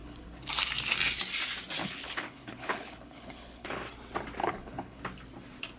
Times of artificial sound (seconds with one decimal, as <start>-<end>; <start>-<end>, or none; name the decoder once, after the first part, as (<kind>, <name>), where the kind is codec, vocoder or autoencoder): 0.0-0.5 (codec, HILCodec); 1.8-3.8; 4.4-5.0